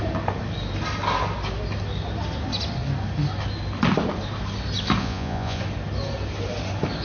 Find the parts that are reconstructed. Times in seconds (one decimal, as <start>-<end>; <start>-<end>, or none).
5.0-5.6